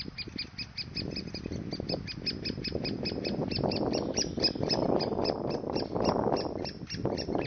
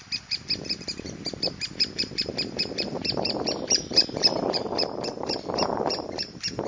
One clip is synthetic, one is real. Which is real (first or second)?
first